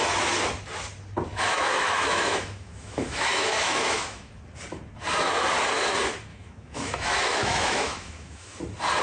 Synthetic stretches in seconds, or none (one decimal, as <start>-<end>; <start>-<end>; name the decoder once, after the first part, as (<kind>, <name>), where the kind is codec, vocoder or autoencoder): 1.3-4.3 (autoencoder, DAC-VAE); 6.3-8.6